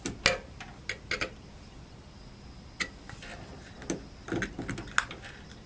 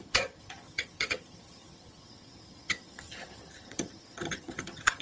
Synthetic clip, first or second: second